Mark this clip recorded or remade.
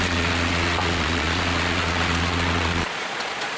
remade